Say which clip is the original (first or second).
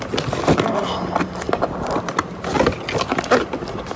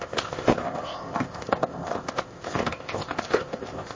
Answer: first